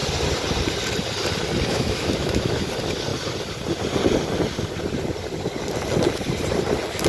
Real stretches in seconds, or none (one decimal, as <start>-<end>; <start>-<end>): 0.0-1.7; 2.7-7.1

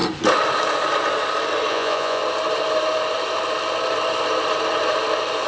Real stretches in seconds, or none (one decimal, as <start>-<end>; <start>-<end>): 0.0-1.7; 2.2-5.5